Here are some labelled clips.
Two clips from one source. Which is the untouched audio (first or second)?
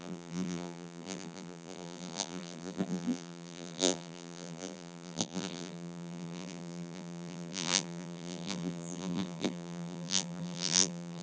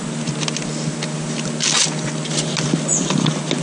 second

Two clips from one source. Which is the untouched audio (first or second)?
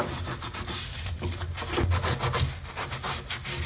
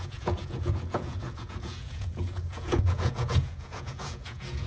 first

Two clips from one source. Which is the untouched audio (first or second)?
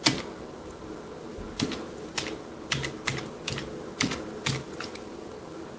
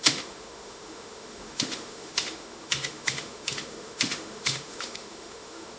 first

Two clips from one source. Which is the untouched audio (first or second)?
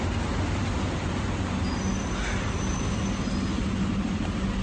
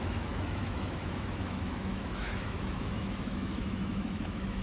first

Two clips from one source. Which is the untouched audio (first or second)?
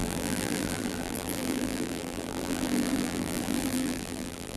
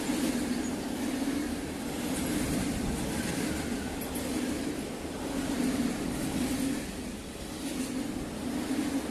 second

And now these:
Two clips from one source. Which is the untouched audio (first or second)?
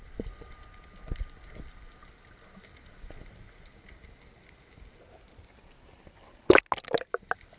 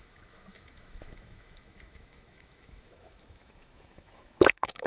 first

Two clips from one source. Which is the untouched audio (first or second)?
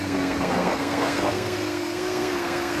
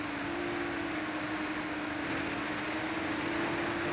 second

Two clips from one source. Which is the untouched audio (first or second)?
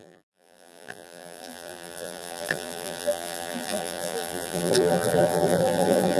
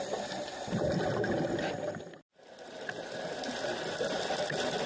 second